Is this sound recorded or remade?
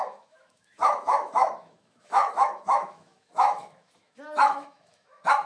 remade